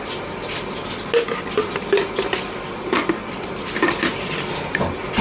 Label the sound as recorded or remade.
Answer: recorded